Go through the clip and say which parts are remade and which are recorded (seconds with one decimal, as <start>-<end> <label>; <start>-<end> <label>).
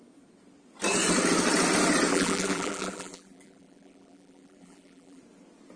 0.0-2.1 recorded; 2.1-5.2 remade; 5.2-5.8 recorded